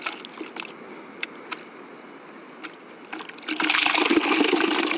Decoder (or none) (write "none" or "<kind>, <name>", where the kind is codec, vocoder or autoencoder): none